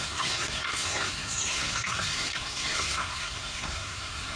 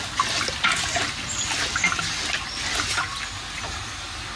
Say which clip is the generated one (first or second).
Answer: first